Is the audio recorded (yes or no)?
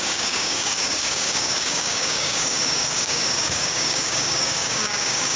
no